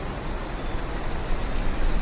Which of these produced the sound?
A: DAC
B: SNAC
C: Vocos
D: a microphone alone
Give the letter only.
D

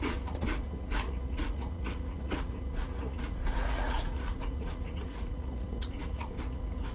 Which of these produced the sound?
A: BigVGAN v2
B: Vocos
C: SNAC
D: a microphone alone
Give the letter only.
B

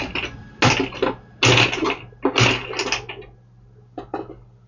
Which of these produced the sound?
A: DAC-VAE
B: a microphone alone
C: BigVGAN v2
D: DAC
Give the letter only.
B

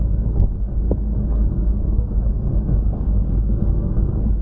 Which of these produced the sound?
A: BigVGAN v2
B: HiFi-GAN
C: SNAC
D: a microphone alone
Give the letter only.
C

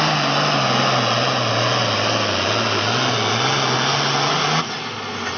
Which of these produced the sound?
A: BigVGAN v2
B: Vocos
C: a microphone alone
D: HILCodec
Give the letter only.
C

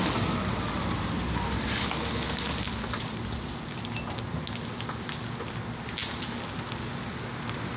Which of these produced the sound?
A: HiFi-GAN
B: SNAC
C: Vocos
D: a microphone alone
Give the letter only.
D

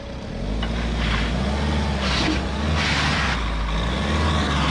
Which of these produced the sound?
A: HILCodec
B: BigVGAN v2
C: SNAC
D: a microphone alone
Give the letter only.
D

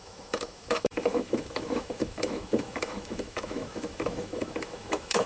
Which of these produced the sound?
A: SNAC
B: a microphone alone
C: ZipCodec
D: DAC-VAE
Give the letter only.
D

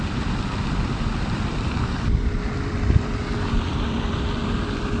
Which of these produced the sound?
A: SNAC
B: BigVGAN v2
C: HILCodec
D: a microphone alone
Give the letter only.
B